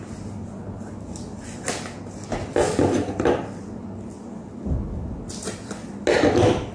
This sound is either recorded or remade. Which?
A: recorded